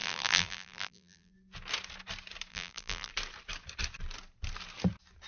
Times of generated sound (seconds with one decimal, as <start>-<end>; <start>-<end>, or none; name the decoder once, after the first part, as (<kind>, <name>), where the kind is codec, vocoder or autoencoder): 0.0-1.3 (vocoder, BigVGAN v2); 2.5-3.1